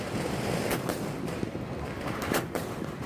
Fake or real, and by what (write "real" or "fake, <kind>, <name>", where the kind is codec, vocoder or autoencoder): real